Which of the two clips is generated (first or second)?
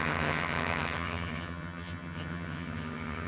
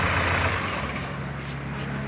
first